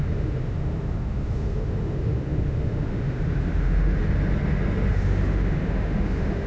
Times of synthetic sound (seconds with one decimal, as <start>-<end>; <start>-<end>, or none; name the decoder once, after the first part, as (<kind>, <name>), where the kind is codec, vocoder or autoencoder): 0.0-4.0 (autoencoder, DAC-VAE); 4.9-6.5